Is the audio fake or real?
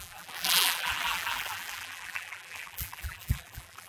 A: fake